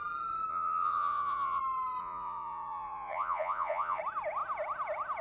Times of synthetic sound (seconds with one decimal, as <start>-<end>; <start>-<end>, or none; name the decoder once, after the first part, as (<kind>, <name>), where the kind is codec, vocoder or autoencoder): 0.5-1.6 (vocoder, Vocos); 2.0-4.0